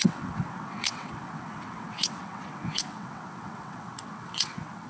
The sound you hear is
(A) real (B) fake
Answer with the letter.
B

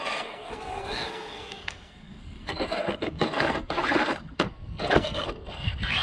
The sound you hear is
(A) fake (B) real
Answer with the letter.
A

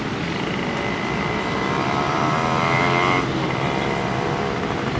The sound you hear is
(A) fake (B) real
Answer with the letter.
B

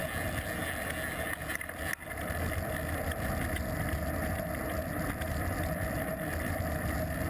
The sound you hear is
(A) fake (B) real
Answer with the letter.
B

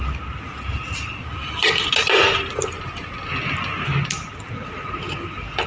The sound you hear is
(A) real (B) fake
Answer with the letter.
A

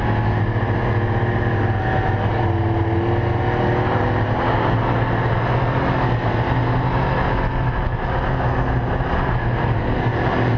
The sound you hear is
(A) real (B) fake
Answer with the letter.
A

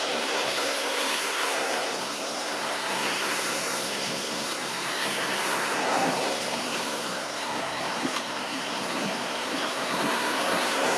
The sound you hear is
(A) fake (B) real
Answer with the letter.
A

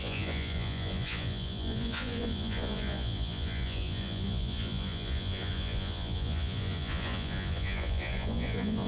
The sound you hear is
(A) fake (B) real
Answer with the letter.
A